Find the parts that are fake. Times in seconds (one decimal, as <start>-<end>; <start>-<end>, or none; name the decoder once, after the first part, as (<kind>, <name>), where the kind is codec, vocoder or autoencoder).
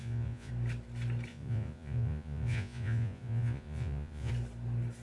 0.0-0.5 (vocoder, Vocos); 1.3-4.3